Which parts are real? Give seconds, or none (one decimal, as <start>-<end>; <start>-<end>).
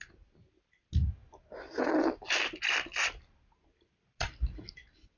0.0-5.2